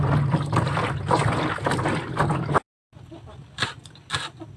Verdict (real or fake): real